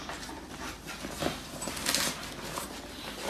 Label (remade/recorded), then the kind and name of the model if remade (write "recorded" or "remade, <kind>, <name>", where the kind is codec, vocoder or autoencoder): recorded